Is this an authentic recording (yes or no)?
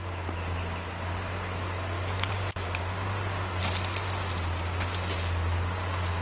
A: yes